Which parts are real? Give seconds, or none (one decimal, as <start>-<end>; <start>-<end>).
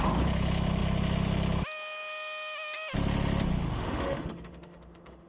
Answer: 0.0-3.5